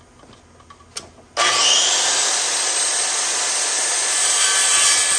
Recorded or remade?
recorded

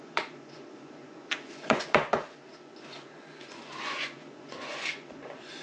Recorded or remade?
remade